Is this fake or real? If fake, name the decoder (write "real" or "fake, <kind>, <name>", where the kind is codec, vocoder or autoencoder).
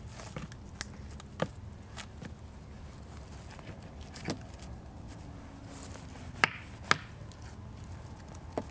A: real